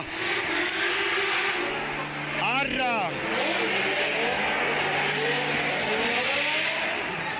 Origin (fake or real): real